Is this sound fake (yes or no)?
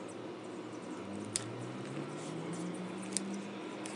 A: no